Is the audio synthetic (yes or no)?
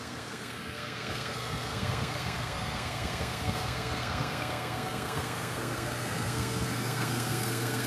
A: yes